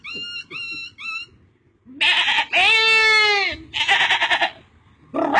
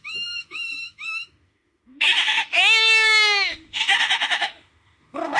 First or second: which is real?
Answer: first